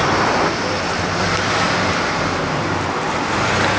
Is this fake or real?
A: real